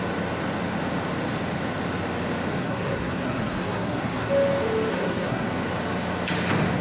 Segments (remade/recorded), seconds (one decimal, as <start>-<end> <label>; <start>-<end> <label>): 0.0-2.6 recorded; 2.6-4.3 remade; 4.3-4.9 recorded; 4.9-5.5 remade; 5.5-6.8 recorded